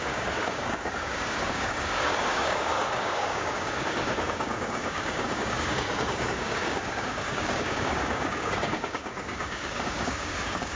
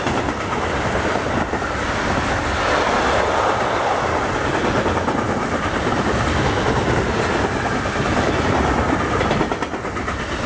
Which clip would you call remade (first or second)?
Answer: first